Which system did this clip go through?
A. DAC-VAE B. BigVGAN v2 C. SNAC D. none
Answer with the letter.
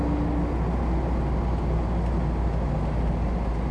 D